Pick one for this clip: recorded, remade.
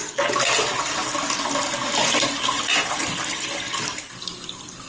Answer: recorded